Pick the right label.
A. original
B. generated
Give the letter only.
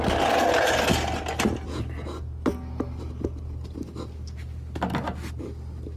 A